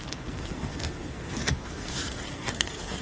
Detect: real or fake fake